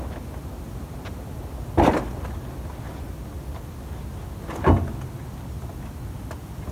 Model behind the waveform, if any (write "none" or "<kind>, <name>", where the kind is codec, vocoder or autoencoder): none